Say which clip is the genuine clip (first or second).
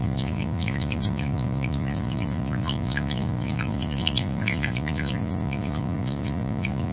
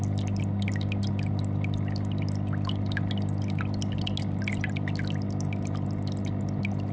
second